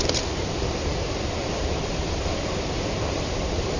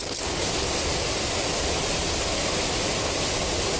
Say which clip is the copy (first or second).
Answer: first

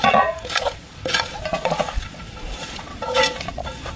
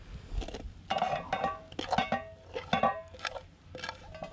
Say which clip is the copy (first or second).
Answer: first